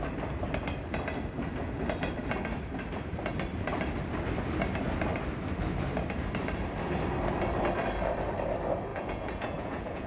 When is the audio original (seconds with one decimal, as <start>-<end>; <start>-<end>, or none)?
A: 0.0-8.9